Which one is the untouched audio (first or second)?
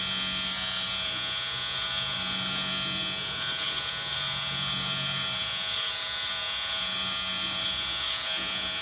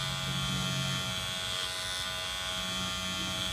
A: second